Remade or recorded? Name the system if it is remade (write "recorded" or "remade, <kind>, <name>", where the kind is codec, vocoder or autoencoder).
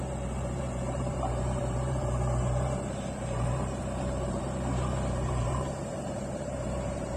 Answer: remade, vocoder, BigVGAN v2